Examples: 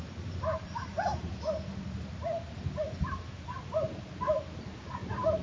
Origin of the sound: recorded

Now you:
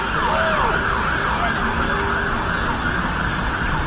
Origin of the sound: recorded